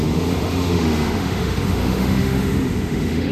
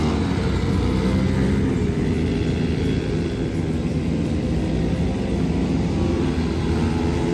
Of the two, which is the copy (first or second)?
first